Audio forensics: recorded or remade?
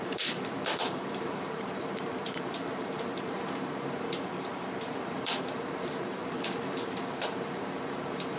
remade